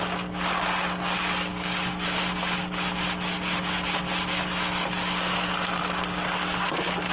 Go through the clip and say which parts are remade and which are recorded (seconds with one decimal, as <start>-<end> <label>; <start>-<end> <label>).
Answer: 0.0-7.1 recorded